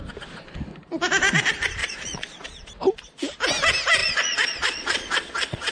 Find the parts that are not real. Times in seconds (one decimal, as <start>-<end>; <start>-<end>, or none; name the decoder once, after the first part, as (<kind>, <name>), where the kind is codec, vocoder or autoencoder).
1.8-2.7 (vocoder, Vocos); 4.0-5.7